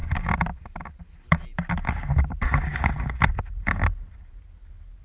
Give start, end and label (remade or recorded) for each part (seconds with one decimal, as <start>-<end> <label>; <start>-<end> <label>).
0.0-5.0 recorded